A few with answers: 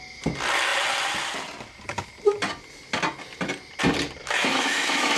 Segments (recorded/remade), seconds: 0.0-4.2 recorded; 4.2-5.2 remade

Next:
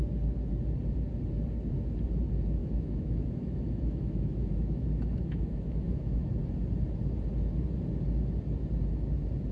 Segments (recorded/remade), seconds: 0.0-2.6 recorded; 2.6-6.2 remade; 6.2-9.5 recorded

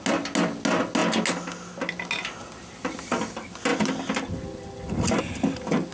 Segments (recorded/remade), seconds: 0.0-5.9 recorded

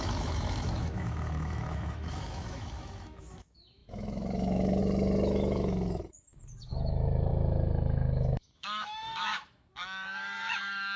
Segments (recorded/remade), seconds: 0.0-11.0 remade

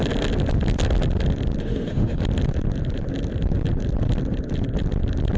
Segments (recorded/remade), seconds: 0.0-1.6 recorded; 1.6-2.2 remade; 2.2-5.4 recorded

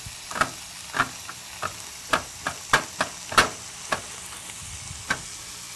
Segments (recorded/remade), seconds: 0.0-5.8 recorded